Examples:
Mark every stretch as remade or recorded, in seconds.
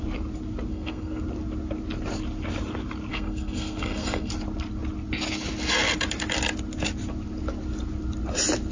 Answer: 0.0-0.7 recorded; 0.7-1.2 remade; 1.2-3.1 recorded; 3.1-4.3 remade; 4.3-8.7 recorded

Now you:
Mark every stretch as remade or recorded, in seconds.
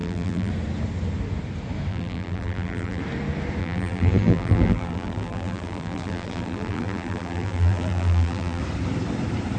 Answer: 0.0-0.5 remade; 0.5-1.9 recorded; 1.9-3.0 remade; 3.0-3.6 recorded; 3.6-8.6 remade; 8.6-9.6 recorded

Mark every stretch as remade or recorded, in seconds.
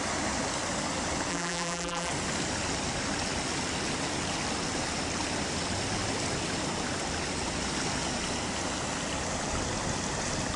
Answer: 0.0-1.3 recorded; 1.3-2.1 remade; 2.1-10.6 recorded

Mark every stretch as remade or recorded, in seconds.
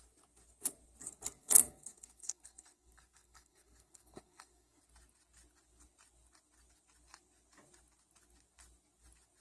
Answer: 0.0-1.4 recorded; 1.4-4.8 remade; 4.8-9.4 recorded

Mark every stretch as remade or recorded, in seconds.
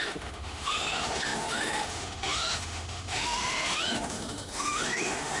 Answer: 0.0-5.4 remade